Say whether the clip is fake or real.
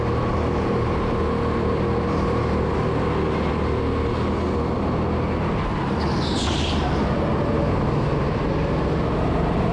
real